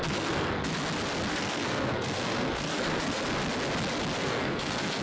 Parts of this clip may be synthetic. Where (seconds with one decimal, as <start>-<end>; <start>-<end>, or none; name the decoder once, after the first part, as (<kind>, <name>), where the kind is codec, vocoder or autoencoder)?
0.0-0.7 (codec, SNAC); 1.3-3.2; 4.2-5.0